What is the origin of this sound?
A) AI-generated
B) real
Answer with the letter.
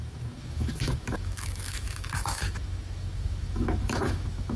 A